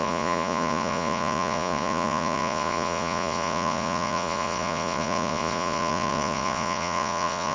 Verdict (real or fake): fake